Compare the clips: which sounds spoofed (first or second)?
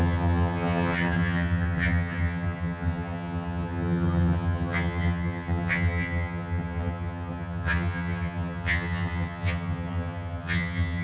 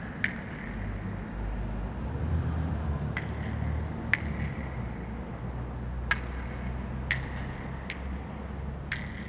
first